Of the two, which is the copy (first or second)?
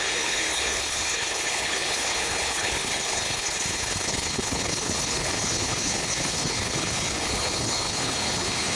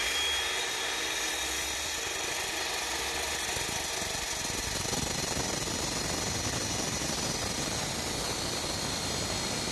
first